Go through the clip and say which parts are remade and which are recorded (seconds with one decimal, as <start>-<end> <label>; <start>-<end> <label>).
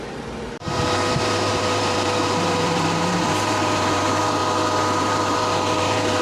0.0-4.4 remade; 4.4-5.0 recorded; 5.0-6.2 remade